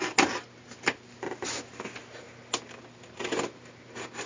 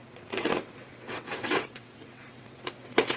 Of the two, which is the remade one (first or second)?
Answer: second